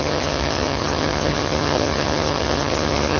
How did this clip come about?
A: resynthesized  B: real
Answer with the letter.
A